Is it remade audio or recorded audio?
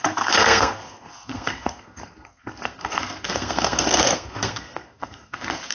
remade